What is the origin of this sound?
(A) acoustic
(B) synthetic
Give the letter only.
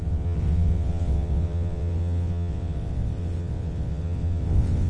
B